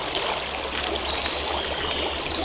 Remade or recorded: recorded